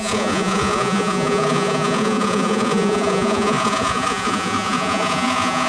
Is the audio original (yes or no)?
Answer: no